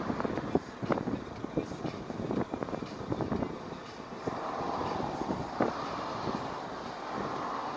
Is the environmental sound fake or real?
real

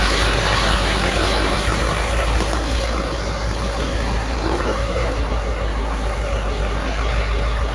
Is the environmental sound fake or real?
fake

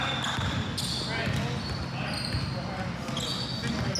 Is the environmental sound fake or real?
real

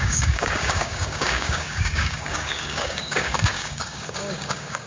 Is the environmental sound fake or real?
fake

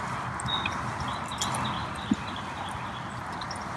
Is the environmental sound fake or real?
real